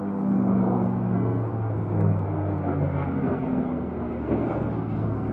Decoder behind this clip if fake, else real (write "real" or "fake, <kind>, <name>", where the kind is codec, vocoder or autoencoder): fake, codec, SNAC